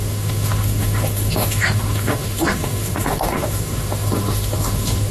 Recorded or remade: remade